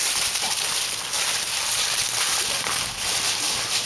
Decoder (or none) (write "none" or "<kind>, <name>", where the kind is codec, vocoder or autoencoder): none